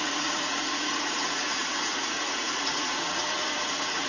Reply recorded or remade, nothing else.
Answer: remade